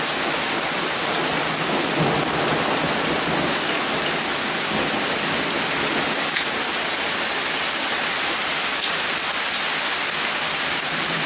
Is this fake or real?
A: real